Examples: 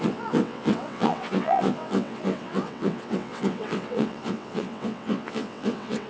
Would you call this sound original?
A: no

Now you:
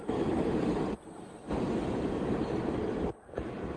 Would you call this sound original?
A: no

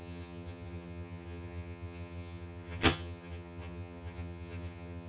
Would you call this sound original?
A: no